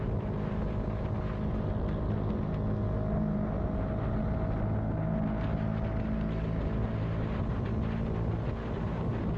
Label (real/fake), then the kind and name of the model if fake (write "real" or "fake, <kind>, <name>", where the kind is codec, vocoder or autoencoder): real